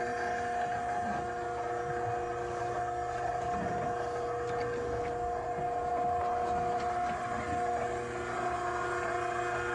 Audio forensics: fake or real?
real